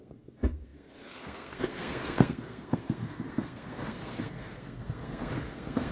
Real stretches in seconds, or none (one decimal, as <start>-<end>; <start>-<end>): none